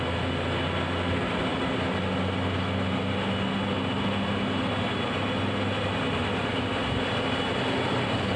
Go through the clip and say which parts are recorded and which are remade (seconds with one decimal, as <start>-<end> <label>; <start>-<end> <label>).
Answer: 0.0-8.4 recorded